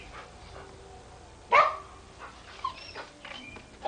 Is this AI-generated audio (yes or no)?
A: no